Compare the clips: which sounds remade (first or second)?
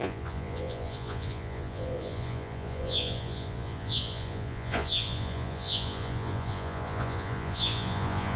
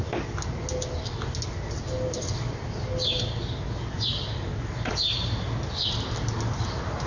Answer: first